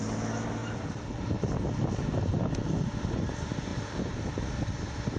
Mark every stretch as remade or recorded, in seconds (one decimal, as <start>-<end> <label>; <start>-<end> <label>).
0.0-0.6 recorded; 0.6-2.9 remade; 2.9-3.7 recorded; 3.7-4.5 remade; 4.5-5.2 recorded